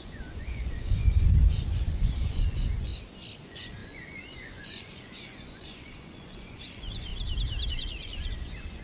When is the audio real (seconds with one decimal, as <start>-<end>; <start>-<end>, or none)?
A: 2.9-3.4; 7.1-7.7